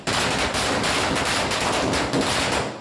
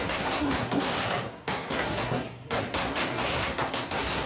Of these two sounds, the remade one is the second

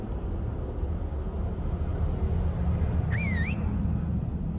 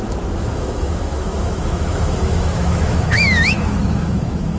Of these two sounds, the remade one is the second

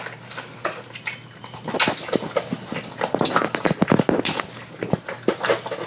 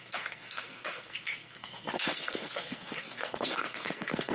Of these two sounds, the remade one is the second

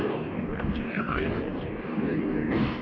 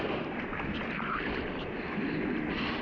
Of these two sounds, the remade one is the first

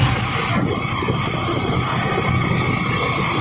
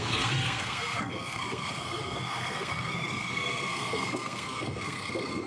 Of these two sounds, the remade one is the second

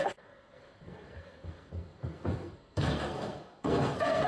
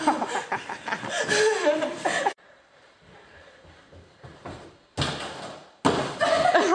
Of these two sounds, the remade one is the first